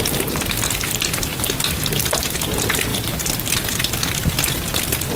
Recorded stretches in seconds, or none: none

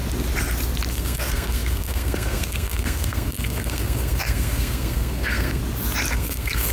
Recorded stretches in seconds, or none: 0.0-0.9; 5.6-6.1

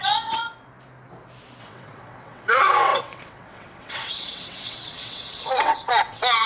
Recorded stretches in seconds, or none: 0.4-1.6

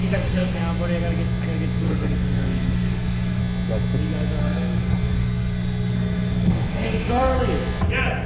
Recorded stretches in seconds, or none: 0.6-1.8; 3.4-4.4; 7.3-8.3

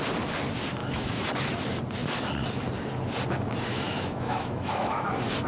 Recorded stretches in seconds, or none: 0.0-0.8; 1.3-3.7; 5.1-5.5

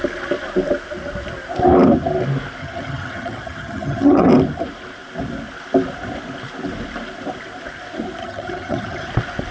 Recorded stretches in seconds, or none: 0.0-2.6; 4.3-8.2; 9.1-9.5

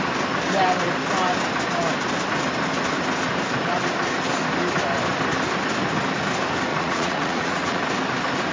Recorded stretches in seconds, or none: 0.0-6.7; 7.8-8.5

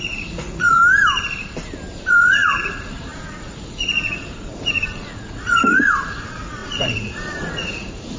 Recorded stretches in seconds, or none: 0.8-2.1